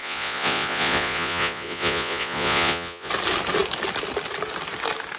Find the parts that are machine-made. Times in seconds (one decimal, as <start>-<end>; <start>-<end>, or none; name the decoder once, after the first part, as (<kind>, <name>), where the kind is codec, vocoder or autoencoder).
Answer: 0.0-3.1 (vocoder, Vocos)